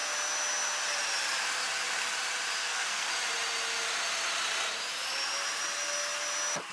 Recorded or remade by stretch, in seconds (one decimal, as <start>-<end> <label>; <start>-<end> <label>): 0.0-2.6 recorded; 2.6-3.1 remade; 3.1-6.7 recorded